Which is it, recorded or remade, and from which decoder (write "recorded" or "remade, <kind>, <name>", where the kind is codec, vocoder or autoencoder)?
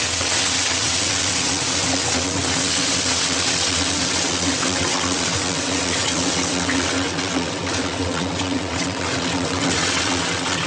remade, vocoder, WaveNeXt